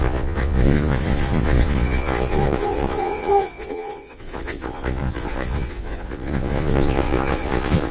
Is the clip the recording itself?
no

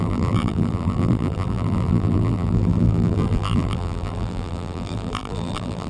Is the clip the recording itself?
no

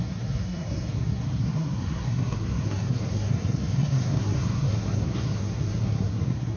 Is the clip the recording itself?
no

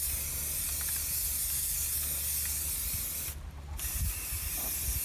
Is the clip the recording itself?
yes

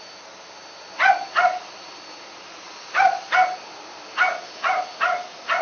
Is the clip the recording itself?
yes